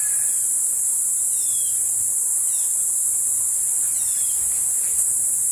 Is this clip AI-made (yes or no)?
no